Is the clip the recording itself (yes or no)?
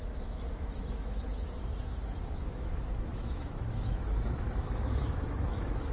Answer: no